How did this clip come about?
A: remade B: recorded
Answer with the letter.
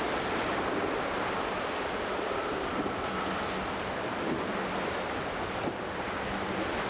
B